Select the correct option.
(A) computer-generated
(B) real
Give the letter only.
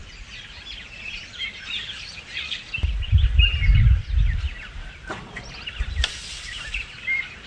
B